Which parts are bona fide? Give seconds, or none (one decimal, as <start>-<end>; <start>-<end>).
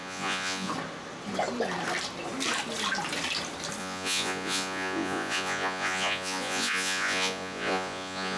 0.7-3.8